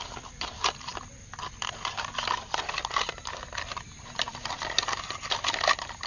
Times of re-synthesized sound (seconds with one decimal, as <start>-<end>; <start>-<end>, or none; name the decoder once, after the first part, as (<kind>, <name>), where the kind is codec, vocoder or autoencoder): none